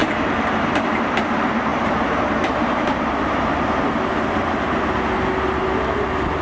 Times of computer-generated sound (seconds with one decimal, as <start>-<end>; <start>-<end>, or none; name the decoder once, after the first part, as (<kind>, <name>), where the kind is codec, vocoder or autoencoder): 1.7-3.7 (vocoder, BigVGAN v2)